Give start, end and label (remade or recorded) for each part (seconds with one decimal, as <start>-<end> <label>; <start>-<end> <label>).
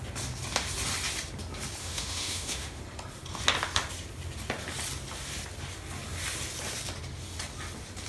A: 0.0-1.8 recorded; 1.8-2.8 remade; 2.8-8.1 recorded